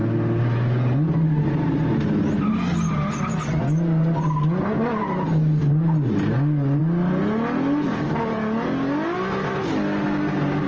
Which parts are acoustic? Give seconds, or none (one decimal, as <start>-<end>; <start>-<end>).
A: 0.0-10.7